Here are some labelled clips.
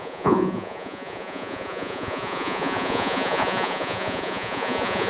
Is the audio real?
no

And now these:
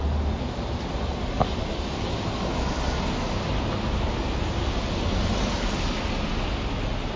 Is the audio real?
yes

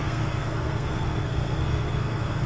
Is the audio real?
no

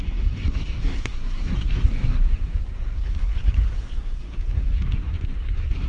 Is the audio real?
no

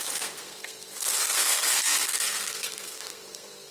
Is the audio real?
no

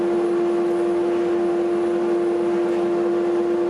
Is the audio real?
yes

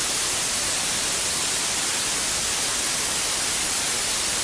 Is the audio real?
yes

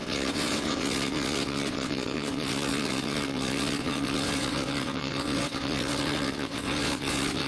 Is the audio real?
no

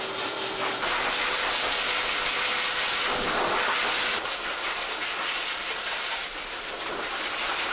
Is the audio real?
yes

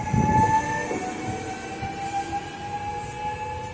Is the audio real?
yes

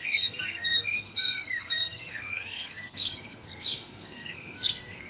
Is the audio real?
no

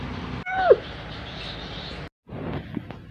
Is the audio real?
yes